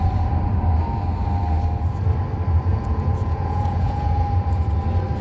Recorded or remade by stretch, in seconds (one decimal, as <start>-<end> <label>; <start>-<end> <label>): 0.0-2.7 recorded; 2.7-4.7 remade; 4.7-5.2 recorded

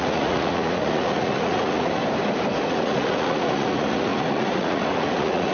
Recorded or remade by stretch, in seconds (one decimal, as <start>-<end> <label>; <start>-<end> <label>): 0.0-2.0 remade; 2.0-2.7 recorded; 2.7-5.5 remade

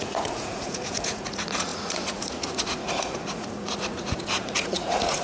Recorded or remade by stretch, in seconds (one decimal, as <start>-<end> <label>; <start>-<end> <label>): 0.0-5.2 remade

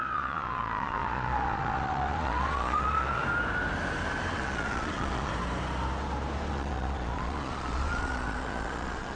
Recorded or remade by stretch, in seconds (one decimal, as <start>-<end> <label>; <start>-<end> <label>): 0.0-3.2 remade; 3.2-4.3 recorded; 4.3-5.3 remade; 5.3-6.5 recorded; 6.5-9.2 remade